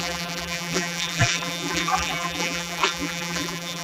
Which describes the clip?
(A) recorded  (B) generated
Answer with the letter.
B